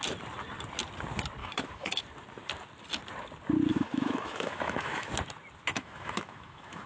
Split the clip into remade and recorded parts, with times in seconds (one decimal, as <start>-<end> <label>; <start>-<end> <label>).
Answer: 0.0-1.4 recorded; 1.4-2.0 remade; 2.0-3.7 recorded; 3.7-5.1 remade; 5.1-5.7 recorded; 5.7-6.9 remade